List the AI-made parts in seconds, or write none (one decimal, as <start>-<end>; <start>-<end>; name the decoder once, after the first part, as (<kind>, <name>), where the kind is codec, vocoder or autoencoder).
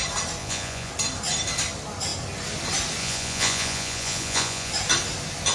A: 0.4-0.9 (vocoder, Vocos); 3.0-4.7